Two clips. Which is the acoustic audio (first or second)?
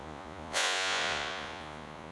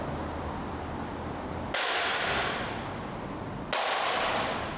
second